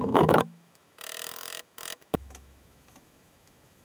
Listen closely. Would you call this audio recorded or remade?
remade